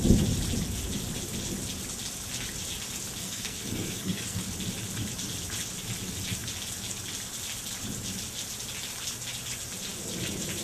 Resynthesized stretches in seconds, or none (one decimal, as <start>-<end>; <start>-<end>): 3.2-4.4